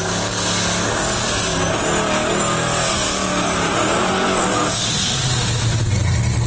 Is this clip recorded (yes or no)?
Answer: yes